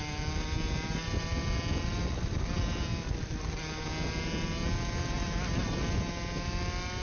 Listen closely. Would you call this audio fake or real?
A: real